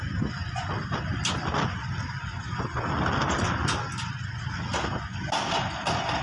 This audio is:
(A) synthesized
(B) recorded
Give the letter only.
B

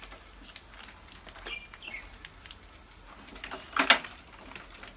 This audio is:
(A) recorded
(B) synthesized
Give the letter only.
A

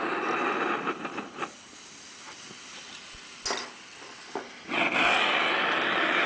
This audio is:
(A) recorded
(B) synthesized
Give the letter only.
A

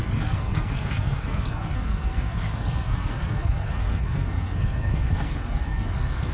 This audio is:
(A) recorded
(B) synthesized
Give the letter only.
B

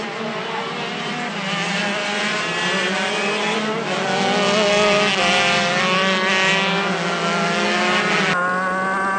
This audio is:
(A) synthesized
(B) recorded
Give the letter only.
B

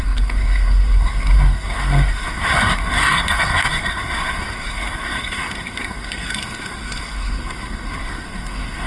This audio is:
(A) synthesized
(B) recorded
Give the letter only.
A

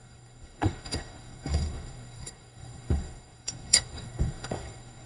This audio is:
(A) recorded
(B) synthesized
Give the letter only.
B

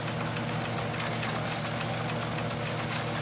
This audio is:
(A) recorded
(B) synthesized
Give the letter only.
A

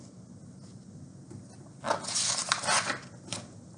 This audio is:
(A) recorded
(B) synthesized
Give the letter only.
A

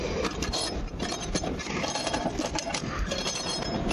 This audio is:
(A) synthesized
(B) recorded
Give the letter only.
B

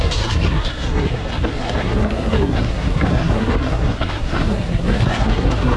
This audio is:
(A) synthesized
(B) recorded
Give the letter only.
A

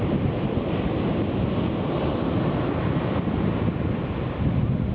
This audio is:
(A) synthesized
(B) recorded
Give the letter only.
B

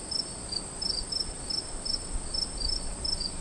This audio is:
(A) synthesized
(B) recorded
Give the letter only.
B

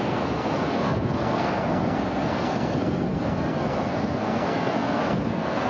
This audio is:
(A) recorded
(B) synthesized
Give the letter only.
B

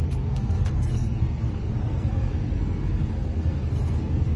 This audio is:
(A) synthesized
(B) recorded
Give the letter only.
A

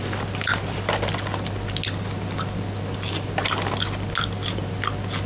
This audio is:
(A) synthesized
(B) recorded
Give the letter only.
B